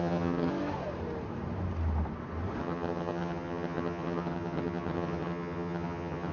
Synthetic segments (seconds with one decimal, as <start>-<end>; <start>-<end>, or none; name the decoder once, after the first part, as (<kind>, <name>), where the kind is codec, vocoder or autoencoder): 0.0-0.5 (vocoder, HiFi-GAN); 2.6-6.3